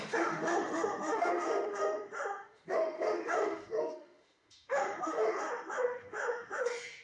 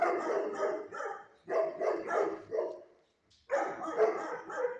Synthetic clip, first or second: first